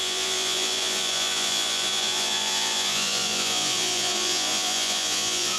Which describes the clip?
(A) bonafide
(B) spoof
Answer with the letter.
B